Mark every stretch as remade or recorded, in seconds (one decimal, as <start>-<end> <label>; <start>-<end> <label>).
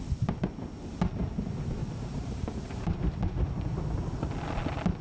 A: 0.0-1.8 recorded; 1.8-3.4 remade; 3.4-5.0 recorded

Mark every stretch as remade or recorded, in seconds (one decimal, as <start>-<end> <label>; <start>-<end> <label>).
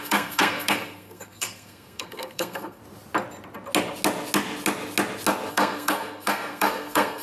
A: 0.0-2.8 remade; 2.8-5.5 recorded; 5.5-7.2 remade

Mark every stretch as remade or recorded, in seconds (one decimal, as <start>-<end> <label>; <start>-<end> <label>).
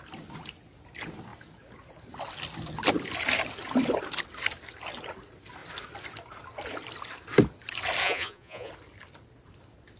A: 0.0-8.0 recorded; 8.0-8.7 remade; 8.7-10.0 recorded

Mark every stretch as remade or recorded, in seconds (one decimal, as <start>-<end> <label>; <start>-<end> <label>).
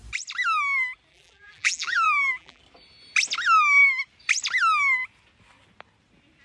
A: 0.0-1.1 recorded; 1.1-2.6 remade; 2.6-6.4 recorded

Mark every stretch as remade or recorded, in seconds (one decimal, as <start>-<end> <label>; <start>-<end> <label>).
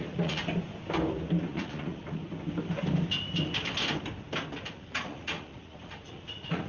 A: 0.0-0.4 remade; 0.4-1.5 recorded; 1.5-2.2 remade; 2.2-4.5 recorded; 4.5-6.7 remade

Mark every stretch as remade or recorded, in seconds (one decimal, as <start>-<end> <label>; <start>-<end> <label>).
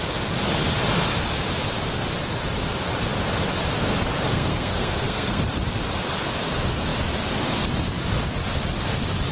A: 0.0-4.3 recorded; 4.3-5.4 remade; 5.4-9.3 recorded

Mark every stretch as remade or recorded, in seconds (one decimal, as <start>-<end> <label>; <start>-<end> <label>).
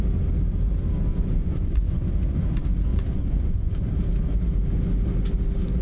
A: 0.0-1.1 recorded; 1.1-2.1 remade; 2.1-2.9 recorded; 2.9-3.9 remade; 3.9-5.8 recorded